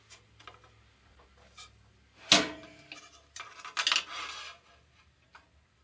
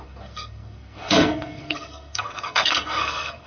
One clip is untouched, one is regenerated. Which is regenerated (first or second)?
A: second